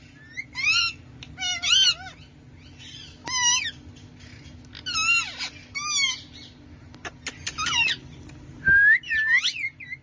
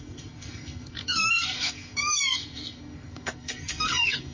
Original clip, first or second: first